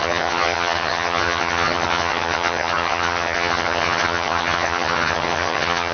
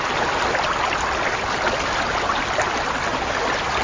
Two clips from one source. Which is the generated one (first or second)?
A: first